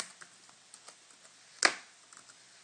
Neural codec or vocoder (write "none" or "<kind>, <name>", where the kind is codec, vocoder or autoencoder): none